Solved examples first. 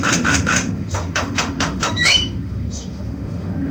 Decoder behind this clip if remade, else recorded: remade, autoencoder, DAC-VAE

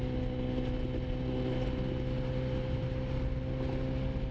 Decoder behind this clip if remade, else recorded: recorded